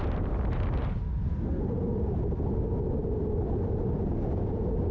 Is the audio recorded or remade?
recorded